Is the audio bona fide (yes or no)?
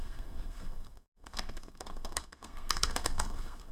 no